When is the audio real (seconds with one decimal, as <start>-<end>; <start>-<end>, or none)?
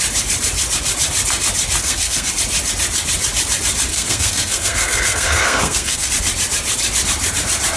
0.0-1.8; 2.3-3.9; 6.1-7.8